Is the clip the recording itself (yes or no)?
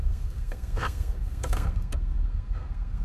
no